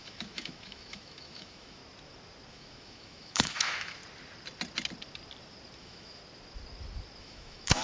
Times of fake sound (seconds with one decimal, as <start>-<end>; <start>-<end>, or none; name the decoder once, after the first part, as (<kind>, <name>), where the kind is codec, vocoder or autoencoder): 0.0-1.8 (autoencoder, DAC-VAE); 2.5-4.0; 5.8-6.2; 7.2-7.8